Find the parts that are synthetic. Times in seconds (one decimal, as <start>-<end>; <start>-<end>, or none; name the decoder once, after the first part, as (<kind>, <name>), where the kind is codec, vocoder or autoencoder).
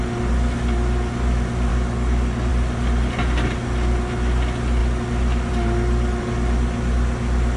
1.7-2.5 (codec, DAC)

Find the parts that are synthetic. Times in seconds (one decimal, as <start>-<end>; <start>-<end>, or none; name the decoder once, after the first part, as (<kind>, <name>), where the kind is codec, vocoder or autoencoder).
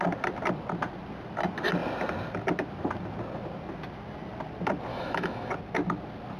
4.9-5.5 (autoencoder, DAC-VAE)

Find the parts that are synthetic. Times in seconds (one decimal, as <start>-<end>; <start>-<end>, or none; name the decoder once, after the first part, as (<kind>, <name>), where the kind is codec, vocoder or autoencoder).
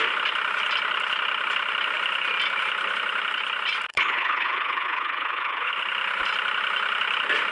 3.9-5.7 (codec, HILCodec)